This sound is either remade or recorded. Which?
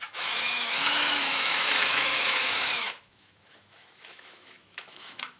remade